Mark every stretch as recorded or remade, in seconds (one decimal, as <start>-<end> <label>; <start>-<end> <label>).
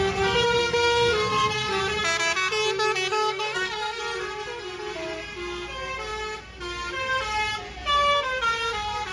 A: 0.0-0.6 recorded; 0.6-1.8 remade; 1.8-3.1 recorded; 3.1-4.0 remade; 4.0-9.1 recorded